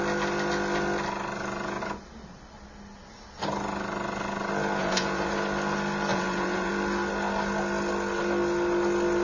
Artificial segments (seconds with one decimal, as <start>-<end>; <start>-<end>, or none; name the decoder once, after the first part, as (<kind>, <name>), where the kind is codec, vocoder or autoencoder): 4.8-5.3 (vocoder, Vocos); 6.1-6.7